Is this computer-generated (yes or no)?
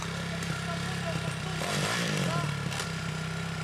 no